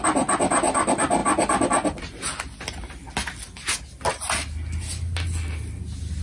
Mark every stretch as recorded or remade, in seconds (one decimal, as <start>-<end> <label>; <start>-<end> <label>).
0.0-6.2 recorded